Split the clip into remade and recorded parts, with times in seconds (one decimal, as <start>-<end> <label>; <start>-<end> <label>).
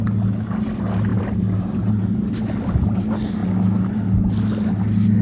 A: 0.0-1.1 recorded; 1.1-1.9 remade; 1.9-5.2 recorded